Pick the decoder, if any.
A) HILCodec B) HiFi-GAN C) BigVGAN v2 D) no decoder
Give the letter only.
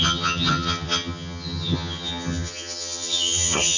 B